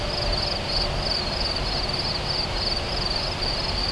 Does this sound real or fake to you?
real